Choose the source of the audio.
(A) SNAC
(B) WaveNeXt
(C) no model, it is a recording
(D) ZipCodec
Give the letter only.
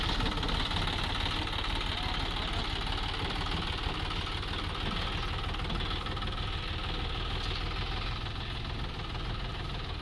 C